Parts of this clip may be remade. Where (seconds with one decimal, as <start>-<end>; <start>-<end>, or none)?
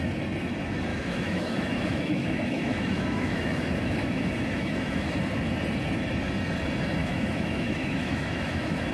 0.9-5.2; 7.0-8.9